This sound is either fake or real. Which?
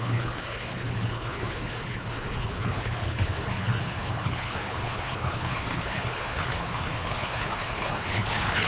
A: fake